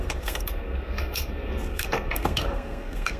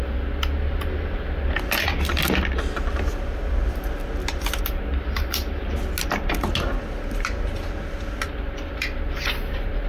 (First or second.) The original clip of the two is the second